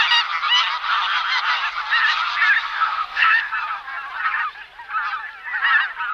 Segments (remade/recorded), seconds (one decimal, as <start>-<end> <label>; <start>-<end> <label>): 0.0-2.6 recorded; 2.6-3.5 remade; 3.5-6.1 recorded